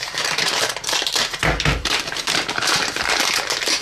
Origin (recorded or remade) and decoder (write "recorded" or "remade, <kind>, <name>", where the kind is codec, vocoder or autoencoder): remade, vocoder, BigVGAN v2